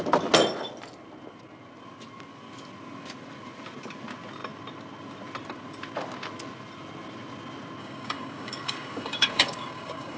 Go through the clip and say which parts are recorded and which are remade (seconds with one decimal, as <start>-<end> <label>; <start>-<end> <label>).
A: 0.0-7.8 recorded; 7.8-10.2 remade